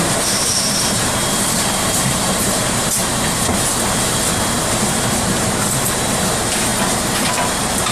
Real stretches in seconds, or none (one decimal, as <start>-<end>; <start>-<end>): 3.0-5.1; 6.7-7.3